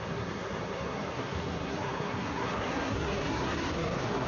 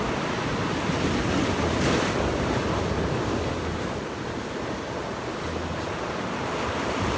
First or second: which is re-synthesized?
first